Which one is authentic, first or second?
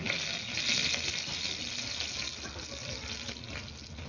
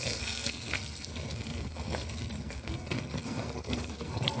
first